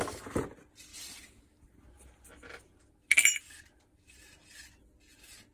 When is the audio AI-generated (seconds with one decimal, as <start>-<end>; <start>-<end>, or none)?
none